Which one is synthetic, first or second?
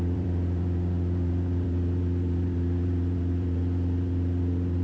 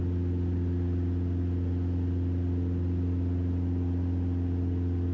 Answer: first